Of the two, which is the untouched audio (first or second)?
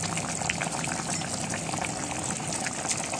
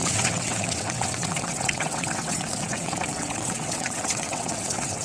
first